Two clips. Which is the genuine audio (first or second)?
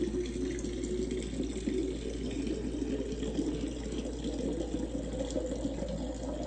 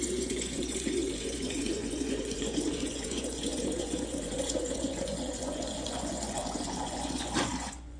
first